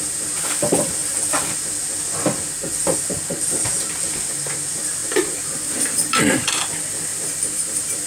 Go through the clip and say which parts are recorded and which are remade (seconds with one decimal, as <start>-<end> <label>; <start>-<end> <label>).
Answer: 0.0-5.0 recorded; 5.0-6.5 remade; 6.5-7.1 recorded; 7.1-8.1 remade